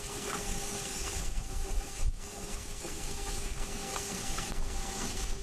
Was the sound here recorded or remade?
remade